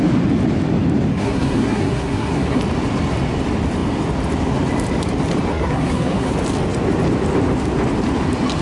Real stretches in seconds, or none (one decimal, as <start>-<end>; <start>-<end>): 0.0-1.1; 2.6-5.5; 6.3-8.6

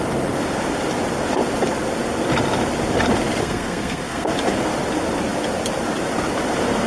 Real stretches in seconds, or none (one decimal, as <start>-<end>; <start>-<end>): 0.0-3.4; 4.3-6.9

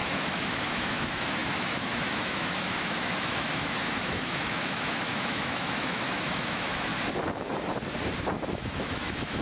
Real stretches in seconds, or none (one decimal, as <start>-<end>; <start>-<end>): 6.9-8.5

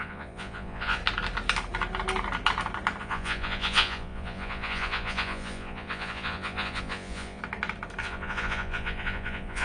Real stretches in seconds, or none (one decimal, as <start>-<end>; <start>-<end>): 1.0-3.0; 7.4-8.0

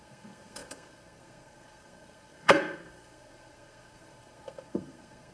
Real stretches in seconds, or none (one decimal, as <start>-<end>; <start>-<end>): none